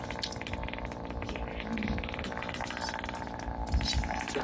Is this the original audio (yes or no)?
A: yes